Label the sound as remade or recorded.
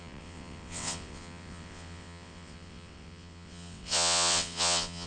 remade